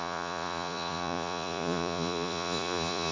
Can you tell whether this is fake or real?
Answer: fake